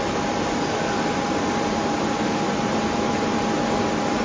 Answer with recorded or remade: recorded